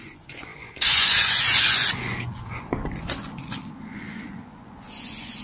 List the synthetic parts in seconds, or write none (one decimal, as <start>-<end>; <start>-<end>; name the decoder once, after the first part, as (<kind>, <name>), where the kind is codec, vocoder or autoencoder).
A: 0.0-5.4 (vocoder, Vocos)